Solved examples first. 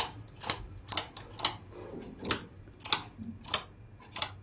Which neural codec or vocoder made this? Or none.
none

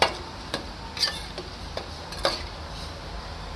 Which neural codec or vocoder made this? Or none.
none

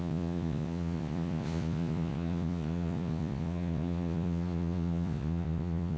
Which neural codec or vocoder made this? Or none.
vocoder, Vocos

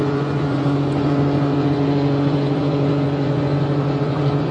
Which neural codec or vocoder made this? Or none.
vocoder, Vocos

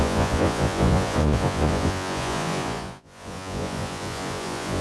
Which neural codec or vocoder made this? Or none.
vocoder, Vocos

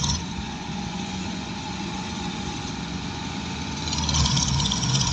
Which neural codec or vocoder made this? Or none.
vocoder, Vocos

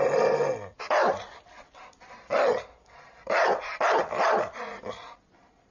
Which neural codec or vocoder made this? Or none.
none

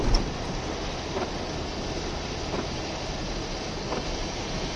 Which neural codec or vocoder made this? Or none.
none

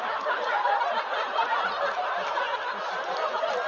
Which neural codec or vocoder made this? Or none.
none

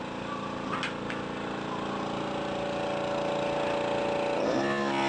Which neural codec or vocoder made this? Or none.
none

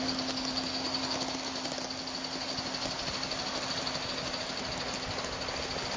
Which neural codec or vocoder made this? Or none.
none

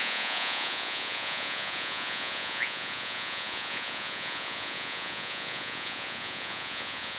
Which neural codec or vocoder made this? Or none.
vocoder, Vocos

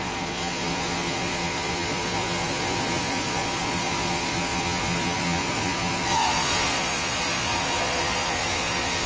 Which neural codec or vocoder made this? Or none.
vocoder, Vocos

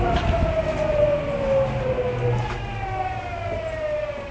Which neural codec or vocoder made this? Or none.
none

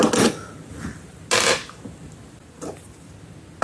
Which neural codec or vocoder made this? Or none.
none